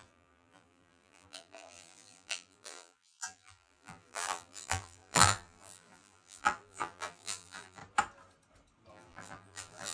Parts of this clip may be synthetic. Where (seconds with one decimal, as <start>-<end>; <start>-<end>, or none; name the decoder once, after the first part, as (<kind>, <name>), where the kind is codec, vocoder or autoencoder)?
0.0-7.8 (vocoder, BigVGAN v2); 8.9-9.9